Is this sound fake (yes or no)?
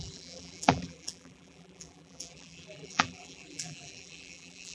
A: yes